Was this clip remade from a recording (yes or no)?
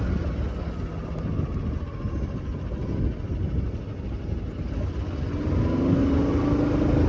no